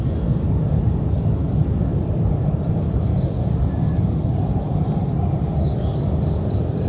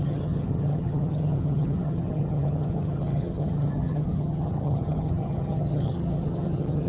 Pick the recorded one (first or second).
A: first